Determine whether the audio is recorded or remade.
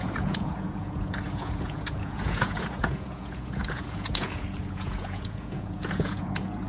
remade